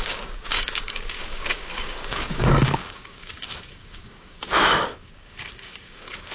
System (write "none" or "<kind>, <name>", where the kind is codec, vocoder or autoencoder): codec, DAC